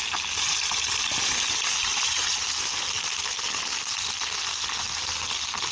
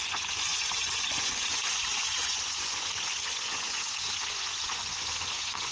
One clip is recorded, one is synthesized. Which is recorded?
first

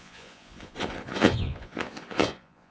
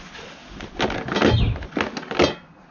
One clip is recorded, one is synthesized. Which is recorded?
second